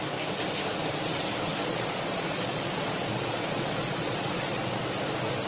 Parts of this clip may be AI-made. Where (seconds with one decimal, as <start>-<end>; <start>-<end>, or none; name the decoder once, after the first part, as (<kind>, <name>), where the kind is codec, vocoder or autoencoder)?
1.5-4.8 (vocoder, Vocos)